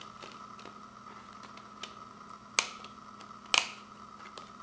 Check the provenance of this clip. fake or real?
real